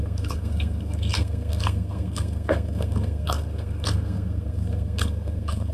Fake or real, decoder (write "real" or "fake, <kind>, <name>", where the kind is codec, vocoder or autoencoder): fake, codec, SNAC